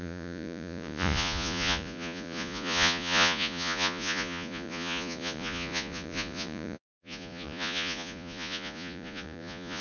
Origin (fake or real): fake